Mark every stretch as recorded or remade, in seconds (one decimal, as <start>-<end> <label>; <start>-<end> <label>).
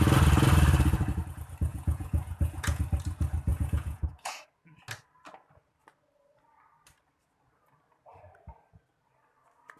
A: 0.0-1.7 recorded; 1.7-2.8 remade; 2.8-3.5 recorded; 3.5-4.4 remade; 4.4-9.8 recorded